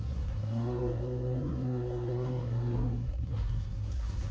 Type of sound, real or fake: fake